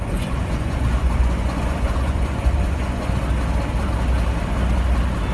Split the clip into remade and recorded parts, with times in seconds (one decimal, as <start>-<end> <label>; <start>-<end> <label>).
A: 0.0-3.2 remade; 3.2-5.3 recorded